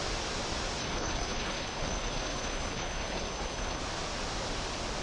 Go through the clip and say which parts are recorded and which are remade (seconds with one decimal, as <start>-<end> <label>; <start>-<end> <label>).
0.0-0.8 recorded; 0.8-3.8 remade; 3.8-5.0 recorded